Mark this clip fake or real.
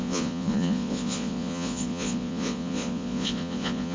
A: fake